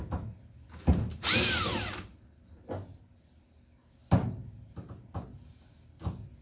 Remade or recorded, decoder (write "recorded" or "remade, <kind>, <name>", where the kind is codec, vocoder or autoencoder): recorded